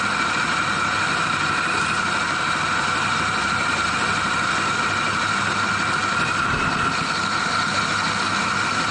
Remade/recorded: recorded